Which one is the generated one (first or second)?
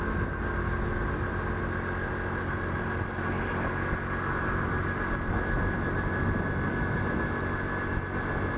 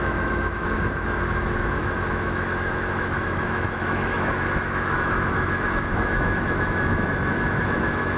second